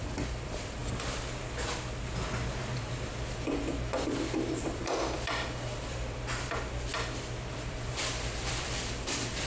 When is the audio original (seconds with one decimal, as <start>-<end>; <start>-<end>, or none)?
0.8-2.6; 6.9-7.5